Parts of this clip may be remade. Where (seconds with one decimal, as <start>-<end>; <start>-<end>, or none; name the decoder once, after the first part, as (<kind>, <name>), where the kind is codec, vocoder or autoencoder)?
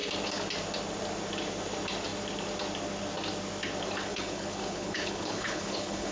4.1-6.1 (codec, HILCodec)